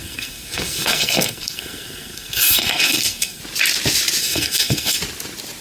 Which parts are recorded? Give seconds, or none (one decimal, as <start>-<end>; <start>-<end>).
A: 3.4-4.2; 5.0-5.6